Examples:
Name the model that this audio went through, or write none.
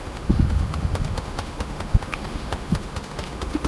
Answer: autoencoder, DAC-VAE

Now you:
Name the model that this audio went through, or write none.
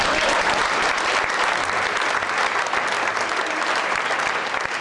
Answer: none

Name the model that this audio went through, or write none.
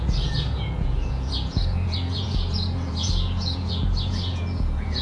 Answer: vocoder, Vocos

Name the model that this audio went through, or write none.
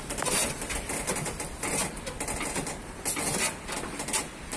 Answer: none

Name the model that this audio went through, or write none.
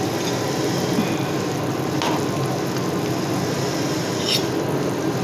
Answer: none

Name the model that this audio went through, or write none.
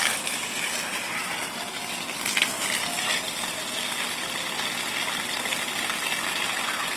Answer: none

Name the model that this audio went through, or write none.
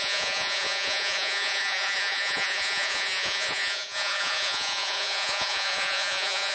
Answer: vocoder, Vocos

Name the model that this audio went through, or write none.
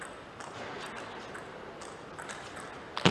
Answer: none